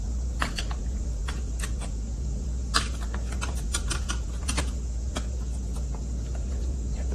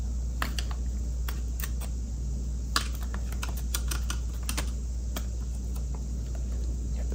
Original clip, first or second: second